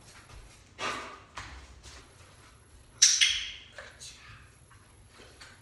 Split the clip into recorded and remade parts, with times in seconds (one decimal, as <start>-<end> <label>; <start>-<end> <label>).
0.0-0.6 remade; 0.6-2.0 recorded; 2.0-3.1 remade; 3.1-3.9 recorded; 3.9-5.6 remade